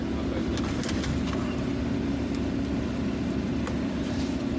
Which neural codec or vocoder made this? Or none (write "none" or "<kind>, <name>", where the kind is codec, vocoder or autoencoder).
none